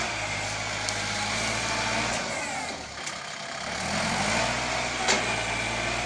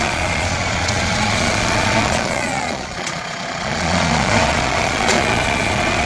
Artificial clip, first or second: second